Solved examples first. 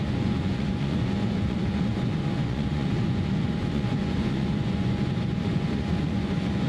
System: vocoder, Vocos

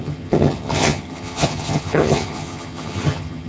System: vocoder, HiFi-GAN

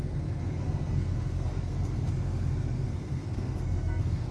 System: codec, SNAC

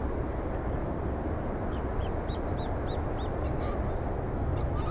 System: none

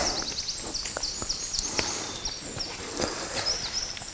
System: none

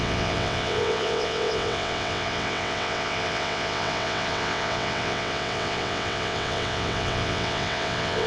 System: vocoder, WaveNeXt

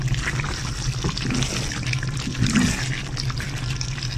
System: none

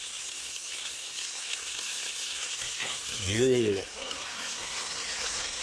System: codec, SNAC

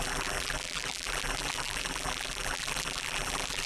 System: vocoder, BigVGAN v2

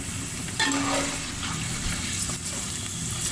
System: none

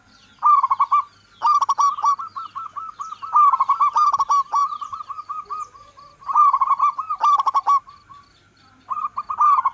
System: none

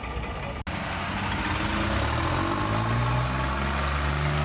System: none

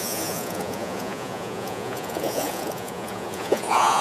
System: vocoder, Vocos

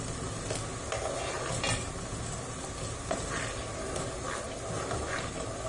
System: none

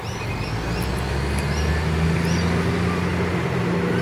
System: none